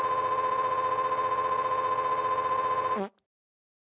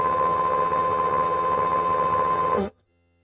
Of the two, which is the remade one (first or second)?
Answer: second